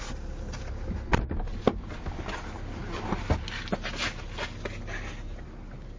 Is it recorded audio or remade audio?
recorded